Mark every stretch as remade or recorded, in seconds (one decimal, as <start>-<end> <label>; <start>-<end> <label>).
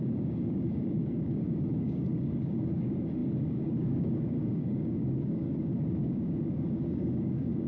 0.0-7.7 remade